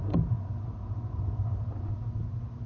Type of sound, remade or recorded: recorded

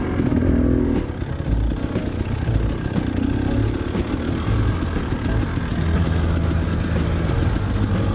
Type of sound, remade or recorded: recorded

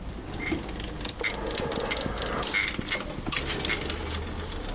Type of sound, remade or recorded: recorded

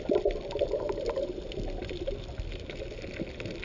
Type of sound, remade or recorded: recorded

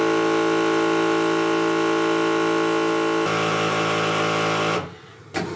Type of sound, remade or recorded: recorded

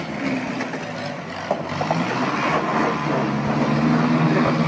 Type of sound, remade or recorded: recorded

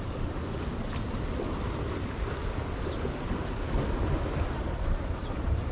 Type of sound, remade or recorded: recorded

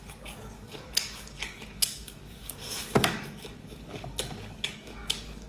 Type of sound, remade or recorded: remade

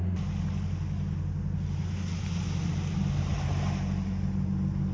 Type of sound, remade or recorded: recorded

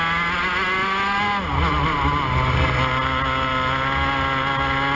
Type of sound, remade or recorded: recorded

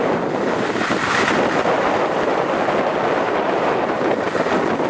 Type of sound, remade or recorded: recorded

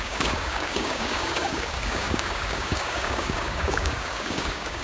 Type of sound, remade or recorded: remade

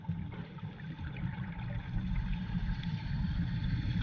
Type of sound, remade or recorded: recorded